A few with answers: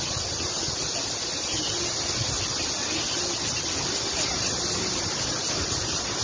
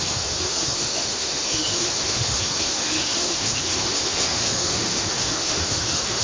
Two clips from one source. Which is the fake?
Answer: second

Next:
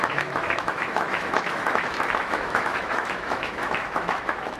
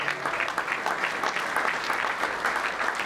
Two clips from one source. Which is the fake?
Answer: first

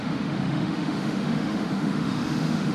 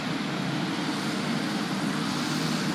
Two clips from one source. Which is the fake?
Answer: first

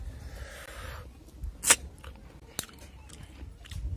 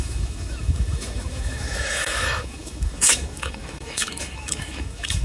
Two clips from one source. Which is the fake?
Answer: second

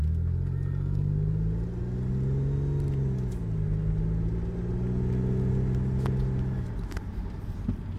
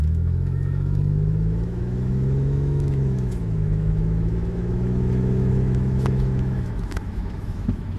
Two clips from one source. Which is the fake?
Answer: second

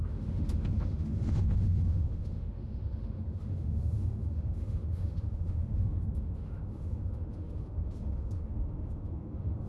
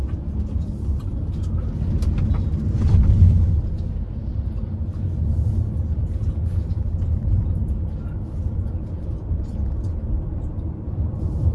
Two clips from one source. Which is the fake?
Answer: first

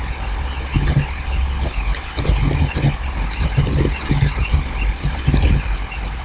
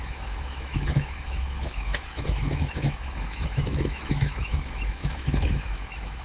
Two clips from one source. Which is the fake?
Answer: second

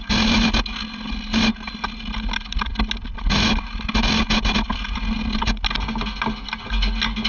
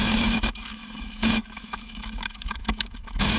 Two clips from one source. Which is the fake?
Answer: second